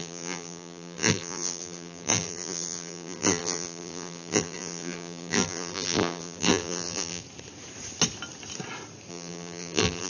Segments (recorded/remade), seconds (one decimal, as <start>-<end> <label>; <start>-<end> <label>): 0.0-7.2 remade; 7.2-9.1 recorded; 9.1-10.1 remade